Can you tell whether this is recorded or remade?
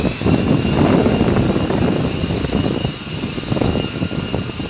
recorded